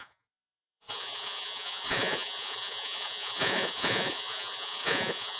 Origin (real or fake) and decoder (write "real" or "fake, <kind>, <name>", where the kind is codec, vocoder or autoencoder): fake, vocoder, Vocos